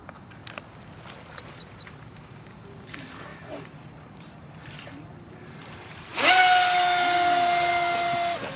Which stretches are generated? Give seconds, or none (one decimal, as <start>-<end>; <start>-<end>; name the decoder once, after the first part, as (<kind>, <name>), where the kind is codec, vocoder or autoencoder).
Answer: 0.0-0.4 (vocoder, BigVGAN v2); 1.0-6.1